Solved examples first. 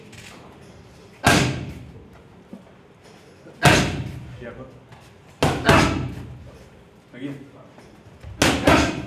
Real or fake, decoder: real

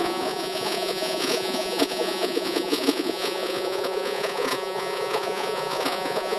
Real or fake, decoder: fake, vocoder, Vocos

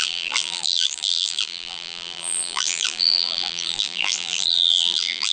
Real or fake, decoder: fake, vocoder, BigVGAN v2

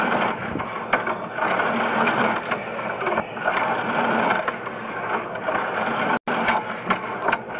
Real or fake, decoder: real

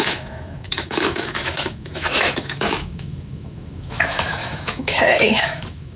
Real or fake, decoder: fake, autoencoder, DAC-VAE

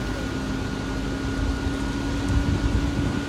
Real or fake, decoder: real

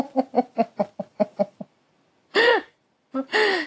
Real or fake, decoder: real